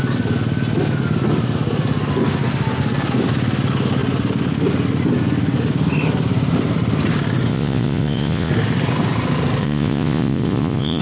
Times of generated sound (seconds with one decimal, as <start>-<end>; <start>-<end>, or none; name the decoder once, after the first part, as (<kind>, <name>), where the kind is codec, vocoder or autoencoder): 7.5-8.5 (vocoder, Vocos); 9.6-11.0